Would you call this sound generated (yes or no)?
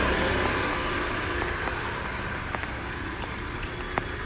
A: no